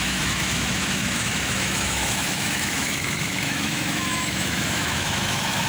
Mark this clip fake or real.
fake